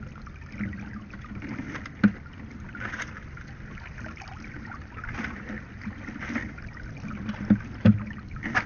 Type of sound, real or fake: real